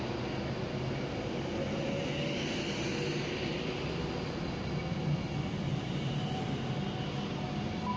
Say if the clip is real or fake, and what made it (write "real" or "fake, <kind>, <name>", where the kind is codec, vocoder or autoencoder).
real